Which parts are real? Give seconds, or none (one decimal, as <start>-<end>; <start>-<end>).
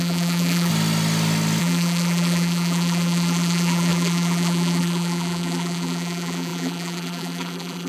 0.7-1.6